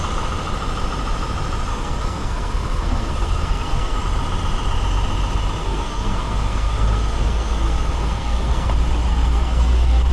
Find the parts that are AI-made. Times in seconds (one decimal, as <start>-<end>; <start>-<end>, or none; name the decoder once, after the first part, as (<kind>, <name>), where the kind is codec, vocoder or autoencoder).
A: 1.7-4.0 (codec, SNAC); 5.6-8.7; 9.1-10.1